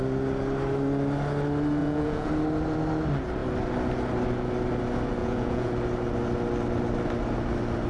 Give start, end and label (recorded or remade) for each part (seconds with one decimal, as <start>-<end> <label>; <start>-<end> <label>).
0.0-1.8 recorded; 1.8-2.3 remade; 2.3-5.2 recorded; 5.2-5.7 remade; 5.7-7.9 recorded